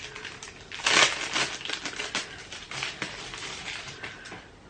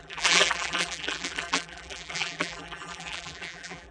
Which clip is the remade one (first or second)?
second